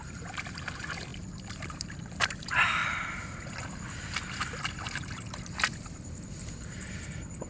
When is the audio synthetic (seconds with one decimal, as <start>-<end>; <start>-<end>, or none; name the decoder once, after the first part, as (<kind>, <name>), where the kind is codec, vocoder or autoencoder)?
0.0-1.1 (vocoder, BigVGAN v2); 1.6-2.8; 4.6-7.5